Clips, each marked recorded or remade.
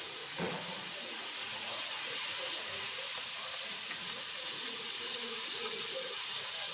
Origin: remade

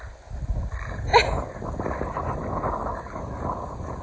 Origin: recorded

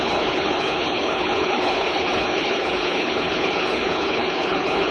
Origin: remade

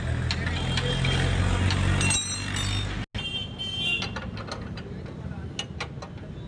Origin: recorded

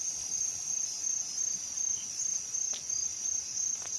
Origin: recorded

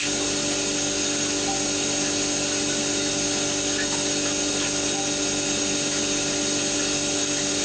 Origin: recorded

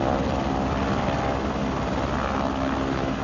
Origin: recorded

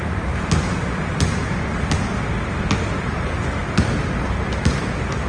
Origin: recorded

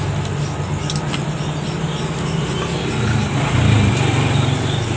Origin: recorded